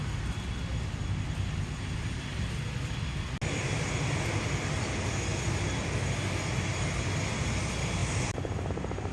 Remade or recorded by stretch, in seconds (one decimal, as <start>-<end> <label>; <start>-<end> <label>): 0.0-9.1 recorded